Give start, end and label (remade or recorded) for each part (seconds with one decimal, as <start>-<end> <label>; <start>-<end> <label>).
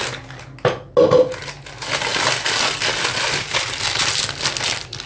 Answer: 0.0-5.1 recorded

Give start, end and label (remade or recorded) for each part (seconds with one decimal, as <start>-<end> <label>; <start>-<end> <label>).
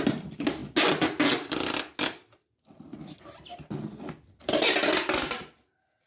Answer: 0.0-6.1 recorded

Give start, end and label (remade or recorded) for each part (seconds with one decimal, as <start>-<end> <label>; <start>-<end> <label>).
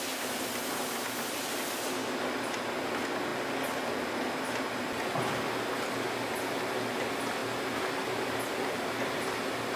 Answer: 0.0-9.8 recorded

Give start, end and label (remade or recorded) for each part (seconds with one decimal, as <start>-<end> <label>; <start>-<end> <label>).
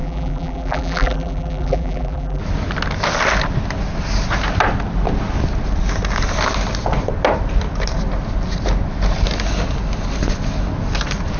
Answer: 0.0-2.4 remade; 2.4-11.4 recorded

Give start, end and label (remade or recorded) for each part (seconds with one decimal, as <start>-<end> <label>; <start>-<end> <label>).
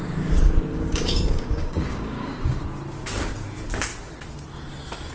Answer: 0.0-0.7 recorded; 0.7-2.6 remade; 2.6-5.1 recorded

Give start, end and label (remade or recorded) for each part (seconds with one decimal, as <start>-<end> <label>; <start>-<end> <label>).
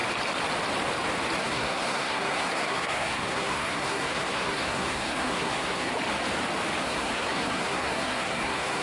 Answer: 0.0-1.4 recorded; 1.4-5.9 remade; 5.9-6.8 recorded; 6.8-8.8 remade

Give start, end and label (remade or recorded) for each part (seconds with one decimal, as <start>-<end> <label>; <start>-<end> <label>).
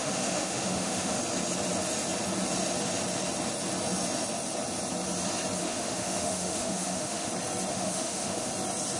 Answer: 0.0-1.2 remade; 1.2-5.6 recorded; 5.6-7.3 remade; 7.3-7.7 recorded; 7.7-8.5 remade; 8.5-9.0 recorded